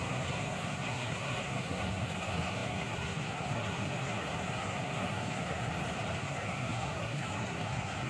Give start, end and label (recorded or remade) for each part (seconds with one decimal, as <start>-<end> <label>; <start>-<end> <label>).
0.0-5.7 remade; 5.7-6.2 recorded; 6.2-8.1 remade